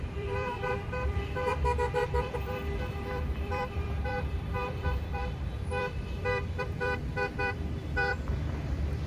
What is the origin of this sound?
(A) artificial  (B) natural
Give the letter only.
A